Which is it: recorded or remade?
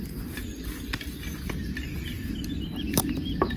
recorded